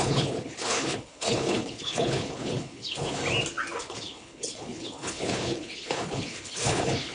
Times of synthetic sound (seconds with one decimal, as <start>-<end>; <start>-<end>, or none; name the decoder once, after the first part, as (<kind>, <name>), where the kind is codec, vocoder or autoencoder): 0.0-3.2 (codec, HILCodec); 3.8-7.1